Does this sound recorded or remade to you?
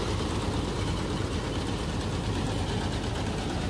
recorded